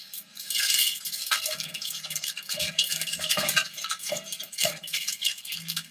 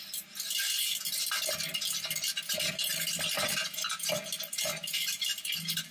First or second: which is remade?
first